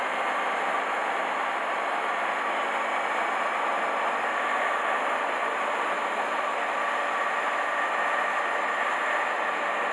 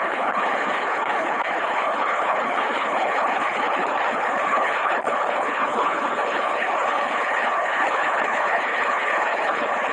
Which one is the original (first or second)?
first